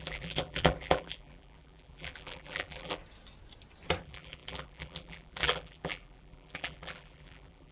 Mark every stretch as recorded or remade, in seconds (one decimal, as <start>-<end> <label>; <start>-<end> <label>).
0.0-3.0 remade; 3.0-4.0 recorded; 4.0-7.7 remade